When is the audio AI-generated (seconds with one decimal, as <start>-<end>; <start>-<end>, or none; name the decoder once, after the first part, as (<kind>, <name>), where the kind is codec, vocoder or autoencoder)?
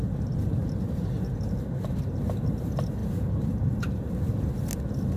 3.0-4.1 (vocoder, BigVGAN v2)